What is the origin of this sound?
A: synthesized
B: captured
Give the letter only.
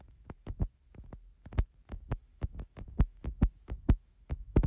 A